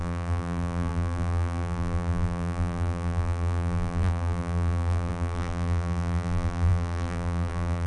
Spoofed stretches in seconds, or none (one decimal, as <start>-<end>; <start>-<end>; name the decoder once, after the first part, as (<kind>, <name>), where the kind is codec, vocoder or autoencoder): 0.0-7.9 (vocoder, BigVGAN v2)